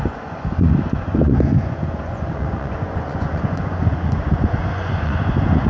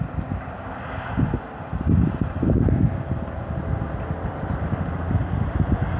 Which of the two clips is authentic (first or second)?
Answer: second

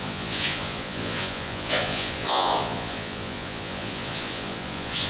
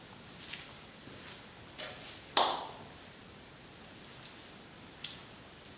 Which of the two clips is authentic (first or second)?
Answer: second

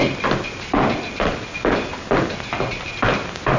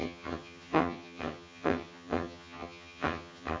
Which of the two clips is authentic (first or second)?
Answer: first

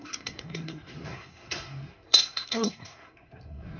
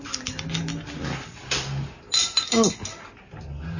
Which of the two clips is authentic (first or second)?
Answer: second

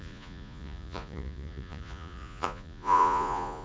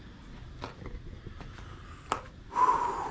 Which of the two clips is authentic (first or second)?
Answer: second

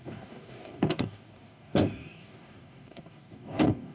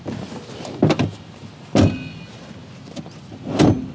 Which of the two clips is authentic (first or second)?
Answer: second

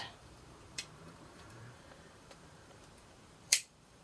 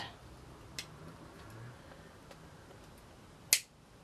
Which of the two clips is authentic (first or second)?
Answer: second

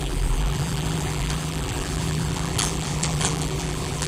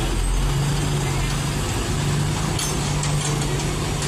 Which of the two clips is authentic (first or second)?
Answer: second